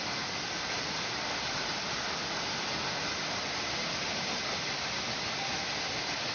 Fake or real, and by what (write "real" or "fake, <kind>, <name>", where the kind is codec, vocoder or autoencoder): real